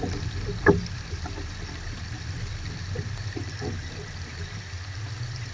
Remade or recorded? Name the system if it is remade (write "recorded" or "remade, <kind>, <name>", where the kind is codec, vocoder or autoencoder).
recorded